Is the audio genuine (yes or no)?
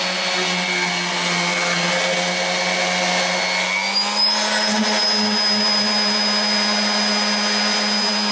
yes